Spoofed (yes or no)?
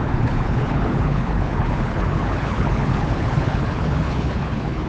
yes